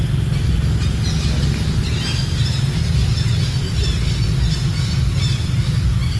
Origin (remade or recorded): recorded